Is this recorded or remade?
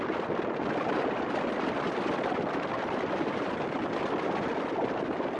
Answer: recorded